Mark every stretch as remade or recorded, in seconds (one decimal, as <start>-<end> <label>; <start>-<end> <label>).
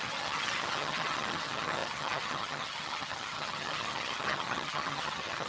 0.0-5.5 remade